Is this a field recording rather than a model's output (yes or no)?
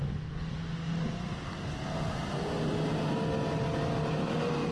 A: yes